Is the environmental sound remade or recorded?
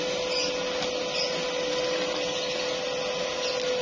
recorded